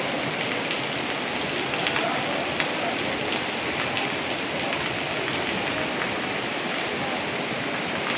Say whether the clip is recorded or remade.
recorded